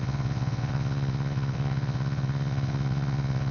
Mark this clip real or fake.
fake